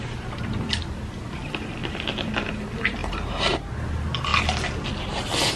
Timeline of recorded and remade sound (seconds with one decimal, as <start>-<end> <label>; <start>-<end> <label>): 0.0-1.8 recorded; 1.8-2.3 remade; 2.3-3.0 recorded; 3.0-3.7 remade; 3.7-5.6 recorded